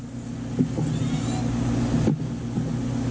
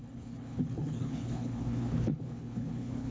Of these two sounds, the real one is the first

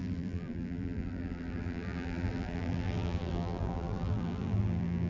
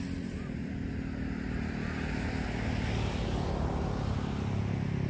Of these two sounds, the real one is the second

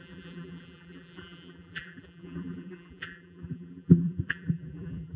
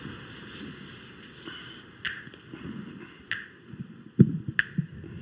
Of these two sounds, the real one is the second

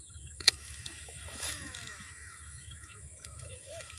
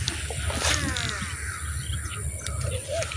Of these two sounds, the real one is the second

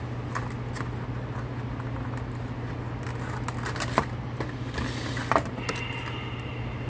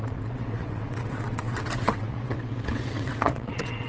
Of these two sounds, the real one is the first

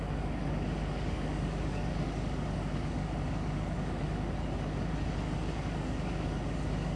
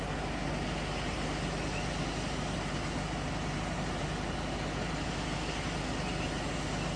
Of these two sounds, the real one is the second